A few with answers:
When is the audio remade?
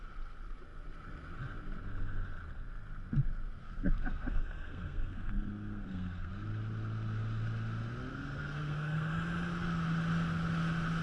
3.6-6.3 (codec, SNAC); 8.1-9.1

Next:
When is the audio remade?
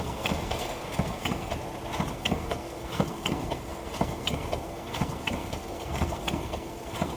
0.0-1.5 (codec, SNAC); 2.1-7.2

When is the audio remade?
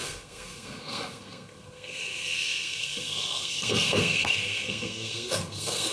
0.0-5.9 (codec, SNAC)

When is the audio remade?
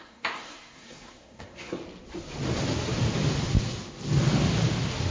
0.0-1.8 (codec, SNAC)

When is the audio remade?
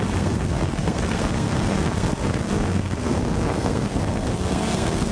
0.0-5.1 (codec, SNAC)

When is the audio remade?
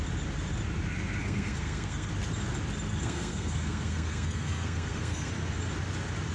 1.2-2.1 (codec, SNAC); 2.9-5.3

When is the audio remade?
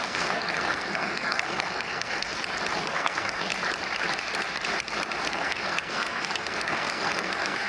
0.0-2.3 (codec, SNAC); 2.9-3.5; 5.3-7.7